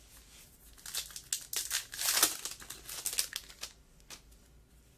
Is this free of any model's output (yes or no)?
yes